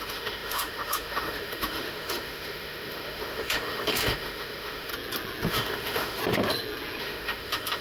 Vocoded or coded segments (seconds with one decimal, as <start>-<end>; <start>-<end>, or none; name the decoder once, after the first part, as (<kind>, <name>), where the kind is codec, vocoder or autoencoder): 0.0-4.9 (autoencoder, DAC-VAE); 5.5-6.2; 7.0-7.8